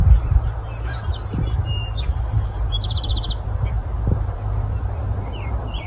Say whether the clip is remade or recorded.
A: remade